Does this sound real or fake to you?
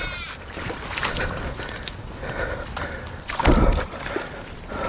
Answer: real